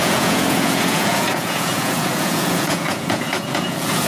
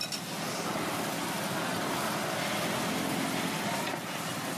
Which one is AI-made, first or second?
first